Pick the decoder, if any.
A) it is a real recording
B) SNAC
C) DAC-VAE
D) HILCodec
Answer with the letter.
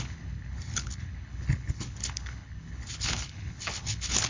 D